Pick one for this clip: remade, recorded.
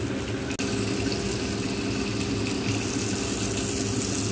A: recorded